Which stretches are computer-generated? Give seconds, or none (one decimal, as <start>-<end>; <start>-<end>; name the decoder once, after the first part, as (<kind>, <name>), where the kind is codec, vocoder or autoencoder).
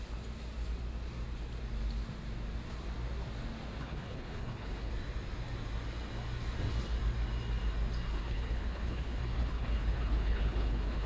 3.8-4.9 (codec, HILCodec); 8.1-11.1